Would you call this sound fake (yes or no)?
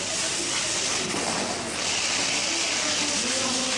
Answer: no